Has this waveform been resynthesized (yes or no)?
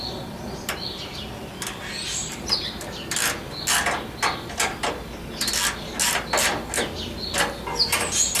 no